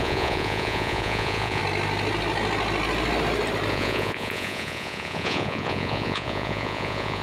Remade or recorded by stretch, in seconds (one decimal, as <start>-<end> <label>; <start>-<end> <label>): 0.0-1.6 remade; 1.6-3.7 recorded; 3.7-7.2 remade